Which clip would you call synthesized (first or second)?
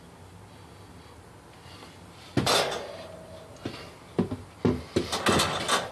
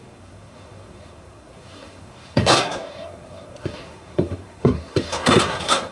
second